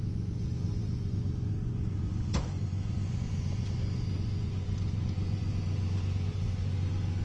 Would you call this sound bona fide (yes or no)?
no